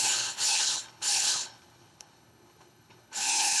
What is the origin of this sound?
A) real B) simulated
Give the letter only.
B